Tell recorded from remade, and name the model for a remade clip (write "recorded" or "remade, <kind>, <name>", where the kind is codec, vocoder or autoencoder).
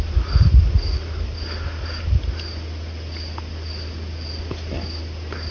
recorded